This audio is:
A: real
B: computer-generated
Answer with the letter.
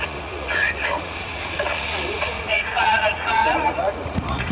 B